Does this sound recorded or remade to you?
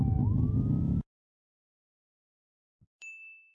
remade